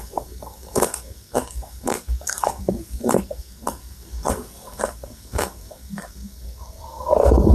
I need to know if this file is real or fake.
fake